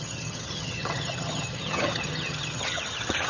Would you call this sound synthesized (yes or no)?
yes